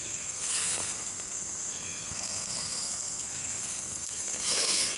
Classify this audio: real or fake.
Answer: fake